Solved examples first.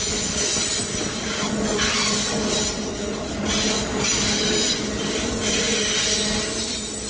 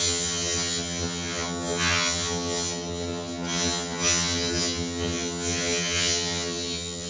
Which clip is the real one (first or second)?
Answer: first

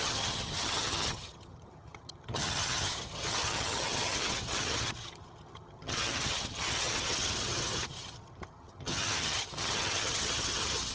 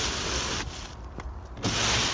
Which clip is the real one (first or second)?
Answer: second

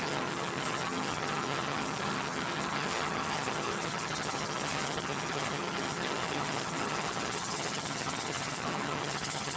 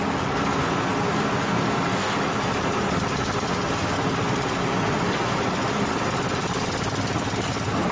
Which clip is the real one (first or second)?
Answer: second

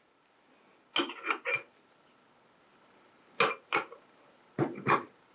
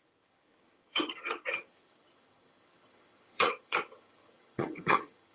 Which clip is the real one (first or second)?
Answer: first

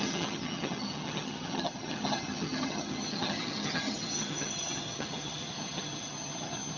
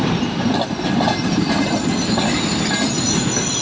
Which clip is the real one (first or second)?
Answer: second